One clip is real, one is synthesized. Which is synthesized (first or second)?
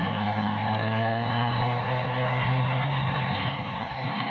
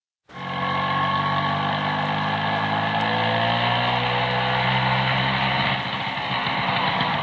first